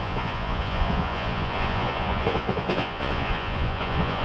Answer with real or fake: fake